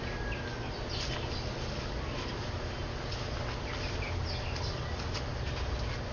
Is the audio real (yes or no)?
yes